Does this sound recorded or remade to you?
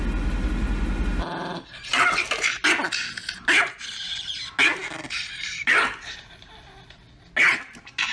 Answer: recorded